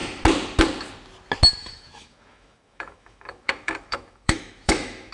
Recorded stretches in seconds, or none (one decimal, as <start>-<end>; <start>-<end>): 0.0-1.6